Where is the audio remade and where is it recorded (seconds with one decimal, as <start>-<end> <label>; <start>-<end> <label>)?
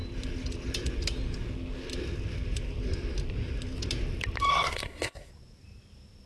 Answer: 0.0-4.5 recorded; 4.5-5.3 remade; 5.3-6.3 recorded